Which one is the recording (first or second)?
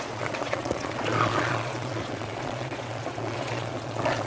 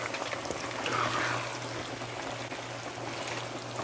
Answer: second